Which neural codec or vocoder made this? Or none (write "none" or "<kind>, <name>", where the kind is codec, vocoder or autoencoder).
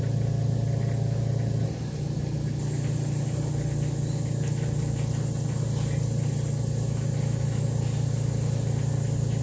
none